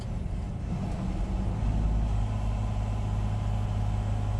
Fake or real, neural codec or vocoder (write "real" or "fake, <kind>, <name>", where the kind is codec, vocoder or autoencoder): real